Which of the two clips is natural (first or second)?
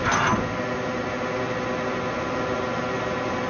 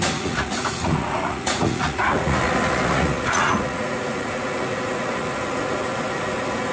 first